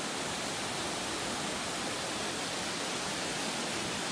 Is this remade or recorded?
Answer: recorded